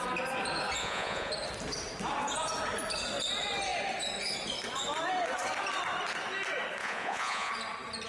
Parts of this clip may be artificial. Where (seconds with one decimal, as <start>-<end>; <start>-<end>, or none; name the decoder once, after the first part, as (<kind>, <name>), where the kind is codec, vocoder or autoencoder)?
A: 0.8-1.3 (vocoder, Vocos); 6.8-7.5